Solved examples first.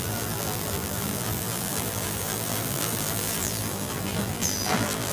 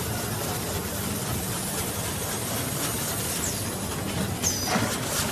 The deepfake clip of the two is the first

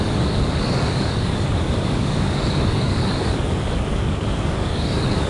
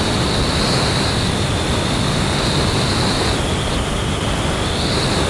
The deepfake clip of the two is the first